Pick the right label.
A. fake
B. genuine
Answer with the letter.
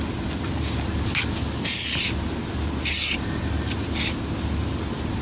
B